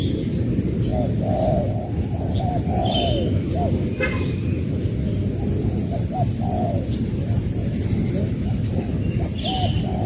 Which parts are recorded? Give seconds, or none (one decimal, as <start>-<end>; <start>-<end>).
0.0-10.1